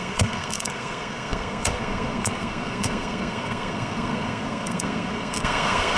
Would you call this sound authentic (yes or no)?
no